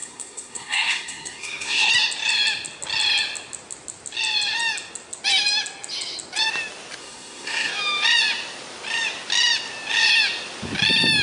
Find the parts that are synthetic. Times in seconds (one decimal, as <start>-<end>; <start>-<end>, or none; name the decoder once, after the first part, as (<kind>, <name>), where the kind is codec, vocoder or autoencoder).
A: 0.0-1.9 (codec, SNAC); 7.0-7.7